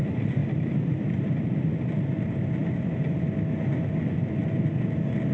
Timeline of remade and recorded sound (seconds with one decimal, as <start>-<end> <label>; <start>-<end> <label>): 0.0-0.4 recorded; 0.4-1.2 remade; 1.2-2.6 recorded; 2.6-3.1 remade; 3.1-5.3 recorded